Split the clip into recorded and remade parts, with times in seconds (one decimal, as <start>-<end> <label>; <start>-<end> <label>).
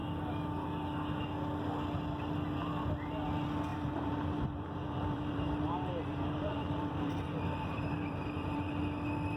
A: 0.0-3.7 recorded; 3.7-8.7 remade; 8.7-9.4 recorded